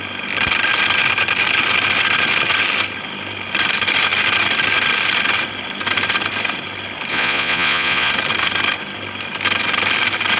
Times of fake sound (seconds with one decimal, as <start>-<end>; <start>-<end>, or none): 7.1-8.1